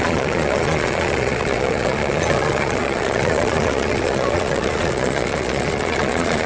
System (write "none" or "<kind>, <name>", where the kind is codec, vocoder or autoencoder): vocoder, Vocos